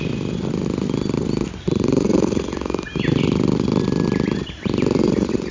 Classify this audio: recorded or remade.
recorded